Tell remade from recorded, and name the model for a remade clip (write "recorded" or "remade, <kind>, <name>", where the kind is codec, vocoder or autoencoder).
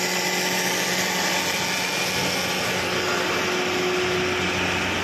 recorded